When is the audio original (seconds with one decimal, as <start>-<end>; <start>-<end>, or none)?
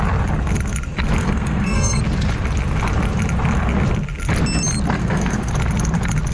0.0-1.2; 2.0-5.0; 5.5-6.3